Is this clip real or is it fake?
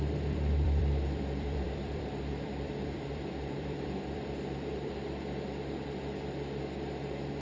fake